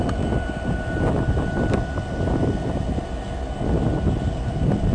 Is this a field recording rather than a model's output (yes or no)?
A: yes